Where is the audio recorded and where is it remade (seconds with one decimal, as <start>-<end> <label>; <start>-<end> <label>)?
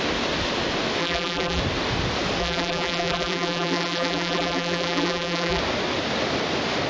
0.0-1.0 recorded; 1.0-1.6 remade; 1.6-2.4 recorded; 2.4-5.6 remade; 5.6-6.9 recorded